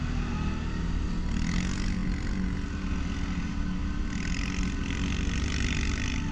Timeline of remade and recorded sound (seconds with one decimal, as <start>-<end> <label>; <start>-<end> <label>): 0.0-6.3 recorded